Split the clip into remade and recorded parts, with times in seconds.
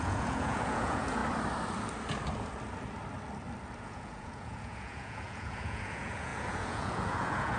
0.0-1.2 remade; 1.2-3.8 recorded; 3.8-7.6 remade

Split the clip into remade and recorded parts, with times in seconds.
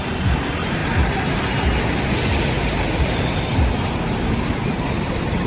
0.0-5.5 recorded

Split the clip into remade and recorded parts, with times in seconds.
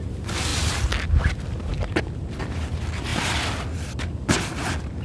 0.0-5.0 recorded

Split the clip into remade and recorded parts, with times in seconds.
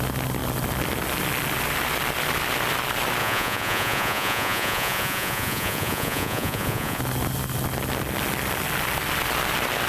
0.0-3.2 recorded; 3.2-7.0 remade; 7.0-9.9 recorded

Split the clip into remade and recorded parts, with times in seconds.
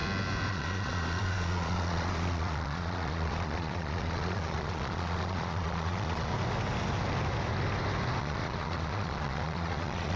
0.0-0.5 recorded; 0.5-6.3 remade; 6.3-8.2 recorded; 8.2-10.2 remade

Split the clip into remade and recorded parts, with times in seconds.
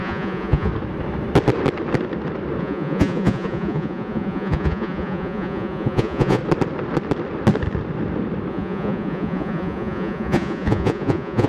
0.0-0.7 remade; 0.7-2.6 recorded; 2.6-6.4 remade; 6.4-8.5 recorded; 8.5-11.5 remade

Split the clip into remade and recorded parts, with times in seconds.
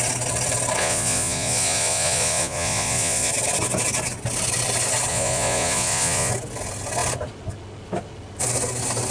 0.0-0.8 recorded; 0.8-3.3 remade; 3.3-5.1 recorded; 5.1-6.3 remade; 6.3-9.1 recorded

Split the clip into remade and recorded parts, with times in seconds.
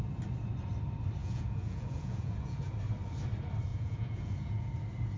0.0-1.2 recorded; 1.2-2.7 remade; 2.7-3.7 recorded; 3.7-4.7 remade; 4.7-5.2 recorded